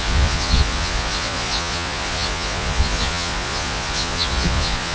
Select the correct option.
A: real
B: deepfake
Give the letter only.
B